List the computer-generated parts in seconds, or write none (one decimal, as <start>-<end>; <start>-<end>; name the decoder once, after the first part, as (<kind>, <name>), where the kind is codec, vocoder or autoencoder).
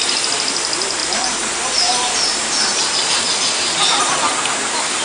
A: 1.0-4.0 (vocoder, BigVGAN v2)